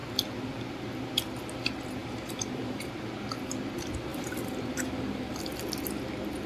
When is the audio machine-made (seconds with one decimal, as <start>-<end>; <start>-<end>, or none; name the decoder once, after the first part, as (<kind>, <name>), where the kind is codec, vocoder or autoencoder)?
2.0-2.9 (vocoder, BigVGAN v2); 4.1-5.4